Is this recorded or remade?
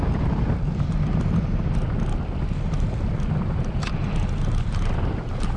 recorded